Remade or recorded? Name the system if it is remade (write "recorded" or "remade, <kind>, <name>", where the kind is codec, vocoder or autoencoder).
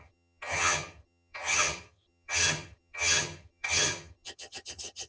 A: remade, vocoder, HiFi-GAN